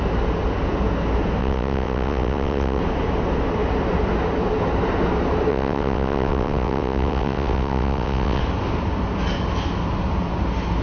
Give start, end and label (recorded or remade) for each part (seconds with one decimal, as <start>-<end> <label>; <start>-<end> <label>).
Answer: 0.0-1.4 recorded; 1.4-2.8 remade; 2.8-5.5 recorded; 5.5-8.4 remade; 8.4-10.8 recorded